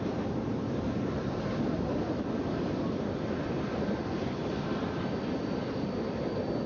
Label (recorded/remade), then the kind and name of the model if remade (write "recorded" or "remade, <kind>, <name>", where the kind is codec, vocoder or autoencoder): recorded